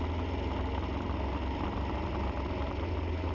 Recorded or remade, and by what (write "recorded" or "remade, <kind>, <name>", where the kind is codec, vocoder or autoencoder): recorded